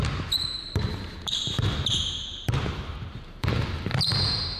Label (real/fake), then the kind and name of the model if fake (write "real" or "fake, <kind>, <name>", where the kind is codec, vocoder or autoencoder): fake, vocoder, BigVGAN v2